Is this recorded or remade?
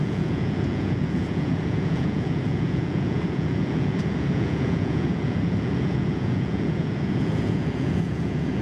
remade